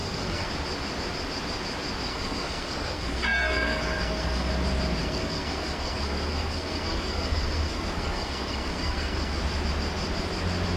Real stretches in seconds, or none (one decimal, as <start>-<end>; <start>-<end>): 0.5-2.1; 4.5-5.0; 9.4-10.8